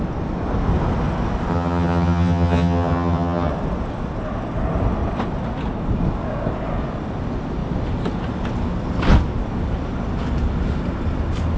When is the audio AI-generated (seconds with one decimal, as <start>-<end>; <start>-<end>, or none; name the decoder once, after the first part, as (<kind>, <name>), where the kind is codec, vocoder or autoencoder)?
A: 1.5-3.5 (vocoder, HiFi-GAN)